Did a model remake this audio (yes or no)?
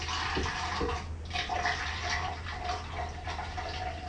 no